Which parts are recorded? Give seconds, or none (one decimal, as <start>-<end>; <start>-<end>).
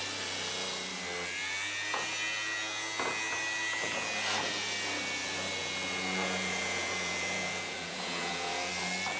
0.0-5.6; 8.7-9.2